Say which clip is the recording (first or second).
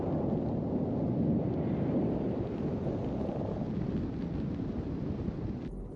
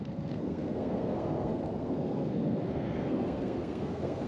first